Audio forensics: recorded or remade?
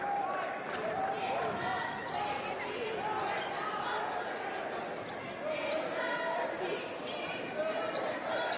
recorded